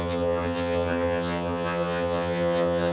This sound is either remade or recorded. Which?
remade